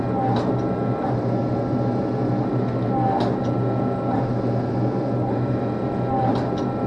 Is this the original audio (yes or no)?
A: yes